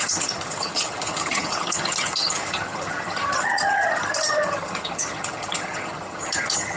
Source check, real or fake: fake